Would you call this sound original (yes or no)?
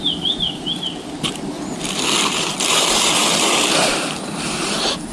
no